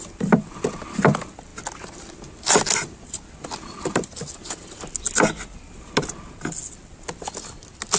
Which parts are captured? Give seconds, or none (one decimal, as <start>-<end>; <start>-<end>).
0.0-8.0